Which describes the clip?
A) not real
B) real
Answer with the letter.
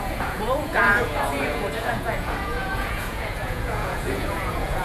A